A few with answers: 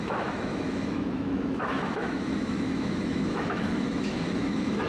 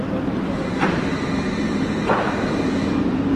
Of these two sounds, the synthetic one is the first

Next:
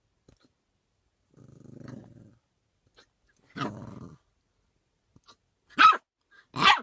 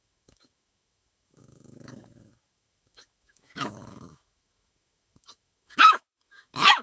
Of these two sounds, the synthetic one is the second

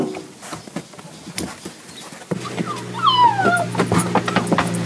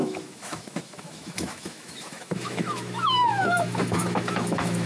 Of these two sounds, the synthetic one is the second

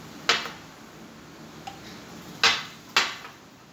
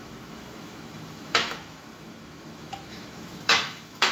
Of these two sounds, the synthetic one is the second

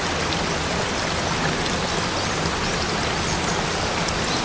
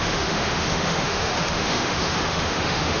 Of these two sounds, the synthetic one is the second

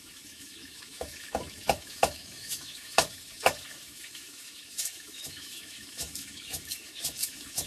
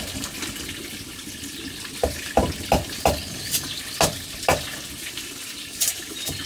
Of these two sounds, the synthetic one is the first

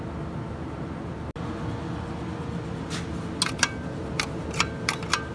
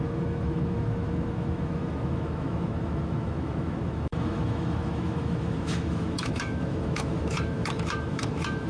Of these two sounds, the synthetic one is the second